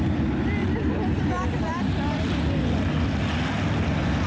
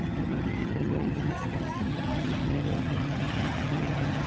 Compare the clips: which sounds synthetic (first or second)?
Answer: second